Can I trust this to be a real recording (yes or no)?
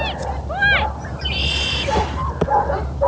yes